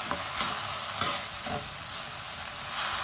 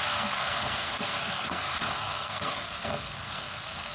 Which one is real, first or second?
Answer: first